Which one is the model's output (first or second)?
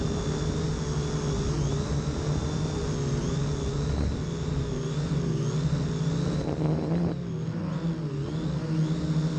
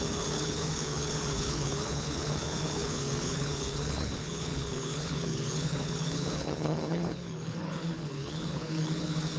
second